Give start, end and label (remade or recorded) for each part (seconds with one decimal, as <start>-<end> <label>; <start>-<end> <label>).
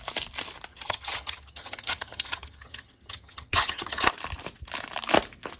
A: 0.0-0.7 recorded; 0.7-4.1 remade; 4.1-5.6 recorded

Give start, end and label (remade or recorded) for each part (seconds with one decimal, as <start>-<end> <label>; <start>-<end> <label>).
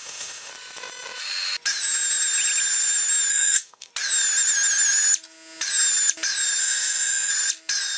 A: 0.0-0.5 remade; 0.5-3.3 recorded; 3.3-3.9 remade; 3.9-6.6 recorded; 6.6-7.3 remade; 7.3-8.0 recorded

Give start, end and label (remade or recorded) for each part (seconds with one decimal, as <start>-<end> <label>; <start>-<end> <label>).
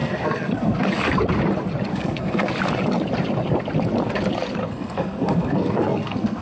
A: 0.0-0.9 remade; 0.9-1.9 recorded; 1.9-2.5 remade; 2.5-4.6 recorded; 4.6-6.4 remade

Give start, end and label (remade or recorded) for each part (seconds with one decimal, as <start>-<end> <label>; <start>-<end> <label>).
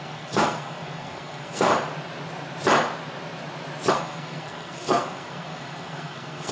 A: 0.0-1.7 remade; 1.7-3.9 recorded; 3.9-6.5 remade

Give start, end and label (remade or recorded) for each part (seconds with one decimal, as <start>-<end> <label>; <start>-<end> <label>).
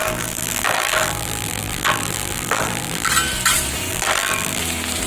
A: 0.0-3.1 remade; 3.1-3.9 recorded; 3.9-4.6 remade; 4.6-5.1 recorded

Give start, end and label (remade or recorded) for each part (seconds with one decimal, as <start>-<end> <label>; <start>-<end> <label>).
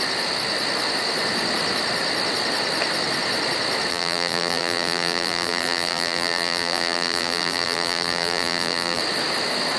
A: 0.0-3.9 recorded; 3.9-9.0 remade; 9.0-9.8 recorded